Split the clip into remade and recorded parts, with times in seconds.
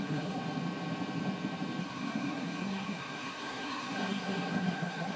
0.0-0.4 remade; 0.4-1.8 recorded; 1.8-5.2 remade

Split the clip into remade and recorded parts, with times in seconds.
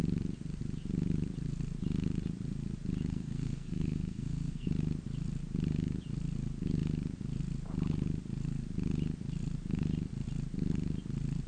0.0-3.1 recorded; 3.1-4.7 remade; 4.7-11.5 recorded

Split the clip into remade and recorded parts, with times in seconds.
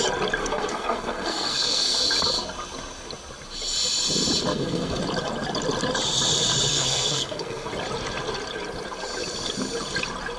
0.0-0.4 recorded; 0.4-2.0 remade; 2.0-4.5 recorded; 4.5-5.0 remade; 5.0-6.7 recorded; 6.7-7.7 remade; 7.7-10.4 recorded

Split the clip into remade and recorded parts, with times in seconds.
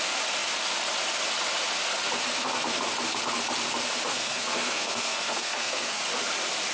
0.0-4.1 recorded; 4.1-6.0 remade; 6.0-6.7 recorded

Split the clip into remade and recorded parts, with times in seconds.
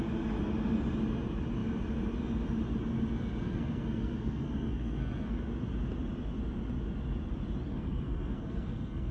0.0-3.4 recorded; 3.4-5.4 remade; 5.4-7.7 recorded; 7.7-9.1 remade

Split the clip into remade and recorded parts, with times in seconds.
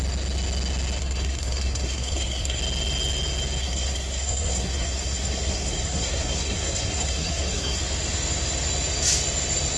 0.0-1.0 recorded; 1.0-2.6 remade; 2.6-3.6 recorded; 3.6-7.8 remade; 7.8-9.8 recorded